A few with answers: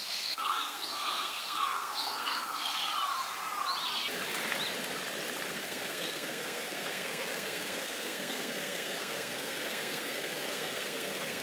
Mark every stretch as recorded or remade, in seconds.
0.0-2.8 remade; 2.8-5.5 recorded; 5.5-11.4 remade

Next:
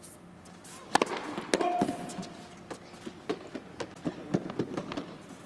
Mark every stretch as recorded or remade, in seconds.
0.0-5.5 recorded

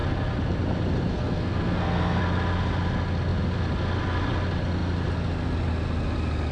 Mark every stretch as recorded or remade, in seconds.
0.0-1.1 recorded; 1.1-2.2 remade; 2.2-6.5 recorded

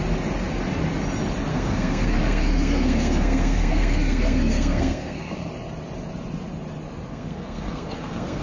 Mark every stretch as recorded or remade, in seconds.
0.0-1.5 recorded; 1.5-5.5 remade; 5.5-7.1 recorded; 7.1-8.4 remade

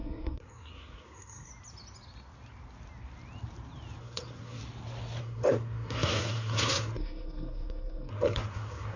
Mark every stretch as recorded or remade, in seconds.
0.0-1.5 remade; 1.5-4.0 recorded; 4.0-4.6 remade; 4.6-5.2 recorded; 5.2-9.0 remade

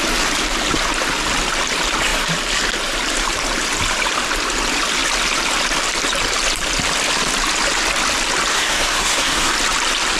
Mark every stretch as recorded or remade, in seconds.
0.0-8.5 recorded; 8.5-9.5 remade; 9.5-10.2 recorded